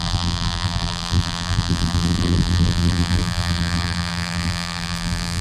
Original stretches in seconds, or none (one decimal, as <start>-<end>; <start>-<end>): none

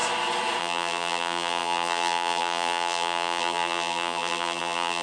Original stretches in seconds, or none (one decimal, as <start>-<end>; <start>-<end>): 0.0-0.6

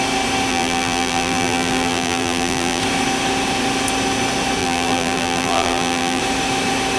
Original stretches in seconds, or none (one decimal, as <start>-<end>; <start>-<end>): 0.0-0.5; 2.8-4.6; 6.2-7.0

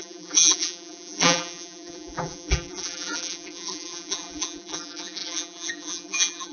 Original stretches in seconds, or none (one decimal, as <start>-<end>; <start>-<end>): none